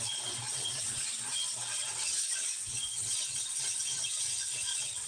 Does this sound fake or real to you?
fake